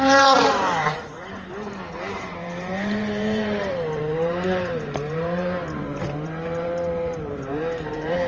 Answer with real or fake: fake